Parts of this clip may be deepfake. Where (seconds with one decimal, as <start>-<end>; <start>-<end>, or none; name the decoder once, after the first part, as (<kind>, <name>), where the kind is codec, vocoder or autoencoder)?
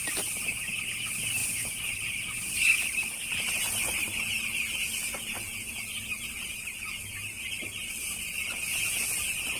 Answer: none